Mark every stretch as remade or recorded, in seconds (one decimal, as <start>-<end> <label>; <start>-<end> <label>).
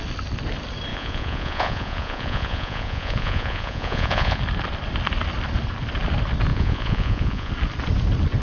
0.0-0.9 recorded; 0.9-4.4 remade; 4.4-6.5 recorded; 6.5-7.5 remade; 7.5-8.4 recorded